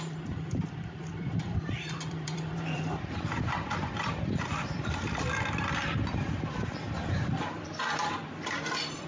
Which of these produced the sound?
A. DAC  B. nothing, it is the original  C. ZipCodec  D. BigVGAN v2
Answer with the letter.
D